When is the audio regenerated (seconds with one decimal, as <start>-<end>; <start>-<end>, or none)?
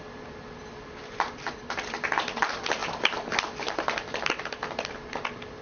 none